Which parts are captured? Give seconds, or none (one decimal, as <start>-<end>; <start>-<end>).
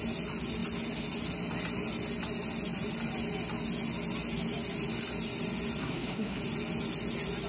0.0-5.8; 6.4-7.5